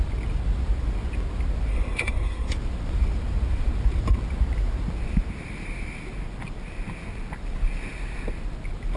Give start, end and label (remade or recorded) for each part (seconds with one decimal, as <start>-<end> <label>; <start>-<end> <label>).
0.0-1.7 recorded; 1.7-2.5 remade; 2.5-9.0 recorded